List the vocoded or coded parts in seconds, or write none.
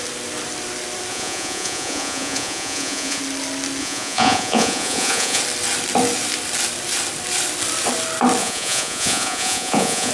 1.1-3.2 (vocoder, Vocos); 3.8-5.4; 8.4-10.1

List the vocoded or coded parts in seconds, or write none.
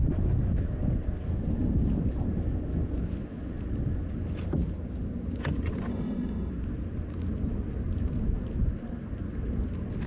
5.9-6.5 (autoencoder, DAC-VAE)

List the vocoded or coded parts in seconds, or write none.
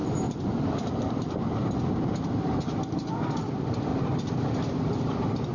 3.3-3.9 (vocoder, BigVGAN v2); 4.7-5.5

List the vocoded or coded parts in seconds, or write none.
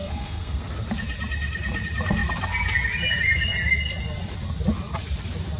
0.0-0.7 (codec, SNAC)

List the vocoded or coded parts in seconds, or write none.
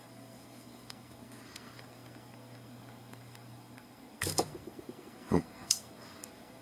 0.0-6.6 (codec, SNAC)